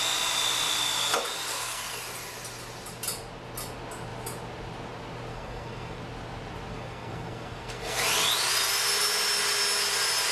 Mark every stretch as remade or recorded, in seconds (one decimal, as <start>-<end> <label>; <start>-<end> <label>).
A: 0.0-1.5 recorded; 1.5-2.0 remade; 2.0-5.3 recorded; 5.3-6.0 remade; 6.0-6.7 recorded; 6.7-8.0 remade; 8.0-10.3 recorded